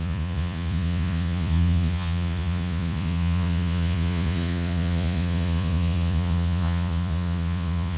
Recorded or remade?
remade